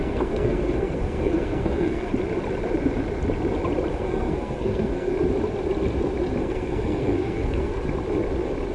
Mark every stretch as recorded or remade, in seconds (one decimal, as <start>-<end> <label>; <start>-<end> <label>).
0.0-2.1 remade; 2.1-3.9 recorded; 3.9-5.1 remade; 5.1-6.4 recorded; 6.4-7.8 remade; 7.8-8.7 recorded